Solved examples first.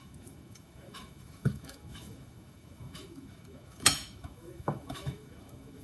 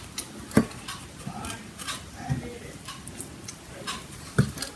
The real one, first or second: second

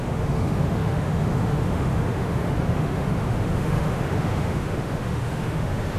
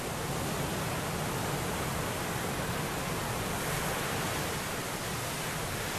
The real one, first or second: second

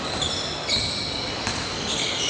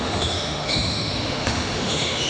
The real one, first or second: first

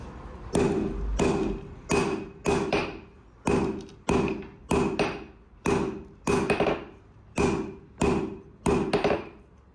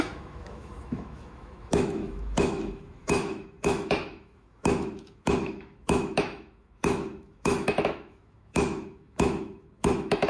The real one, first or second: first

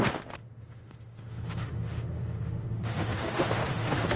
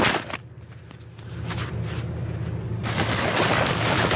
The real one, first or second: second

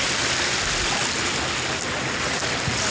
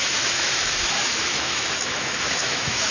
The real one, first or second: first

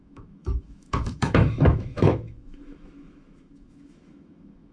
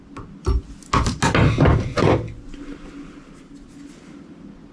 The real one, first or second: second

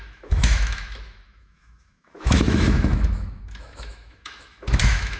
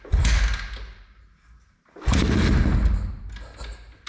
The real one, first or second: second